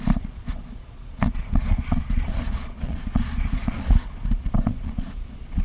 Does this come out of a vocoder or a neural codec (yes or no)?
yes